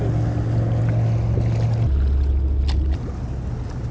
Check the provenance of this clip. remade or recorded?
recorded